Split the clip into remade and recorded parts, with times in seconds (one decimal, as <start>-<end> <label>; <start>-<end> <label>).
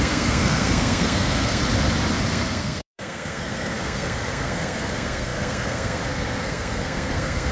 0.0-1.6 remade; 1.6-2.3 recorded; 2.3-7.5 remade